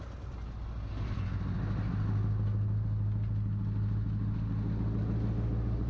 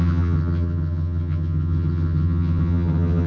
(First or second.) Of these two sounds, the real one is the first